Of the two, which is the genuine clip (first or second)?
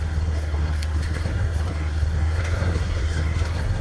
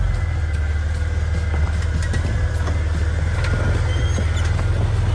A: second